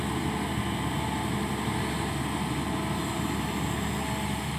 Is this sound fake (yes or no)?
no